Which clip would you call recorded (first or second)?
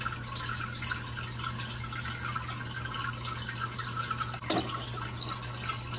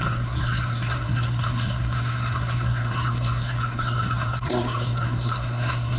first